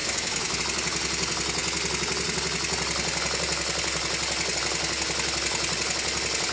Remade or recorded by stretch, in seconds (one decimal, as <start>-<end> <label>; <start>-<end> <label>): 0.0-0.6 remade; 0.6-6.5 recorded